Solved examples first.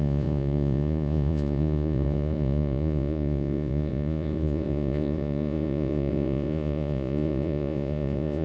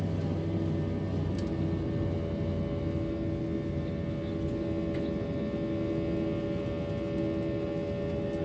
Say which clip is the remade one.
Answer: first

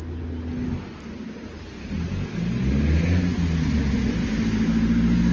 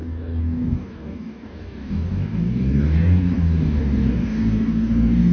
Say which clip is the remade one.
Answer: second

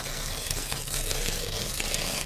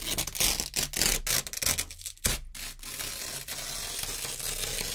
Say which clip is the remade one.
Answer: first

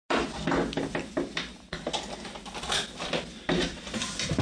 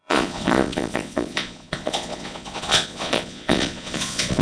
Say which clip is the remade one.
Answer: second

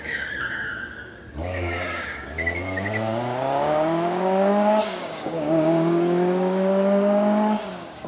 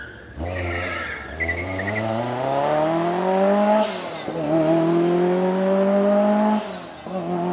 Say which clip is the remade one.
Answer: first